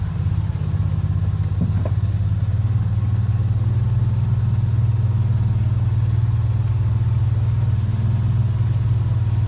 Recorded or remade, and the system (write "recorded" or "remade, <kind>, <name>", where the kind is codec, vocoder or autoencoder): recorded